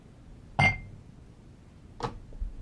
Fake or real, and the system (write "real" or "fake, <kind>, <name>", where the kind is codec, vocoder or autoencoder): real